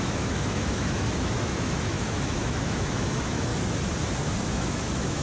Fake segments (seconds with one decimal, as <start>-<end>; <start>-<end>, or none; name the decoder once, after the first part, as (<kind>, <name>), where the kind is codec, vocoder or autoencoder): 0.0-3.5 (autoencoder, DAC-VAE); 4.5-5.2